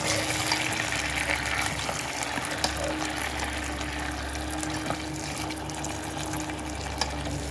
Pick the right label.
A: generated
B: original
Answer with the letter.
B